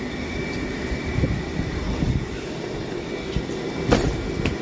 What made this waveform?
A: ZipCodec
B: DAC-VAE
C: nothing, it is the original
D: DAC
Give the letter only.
C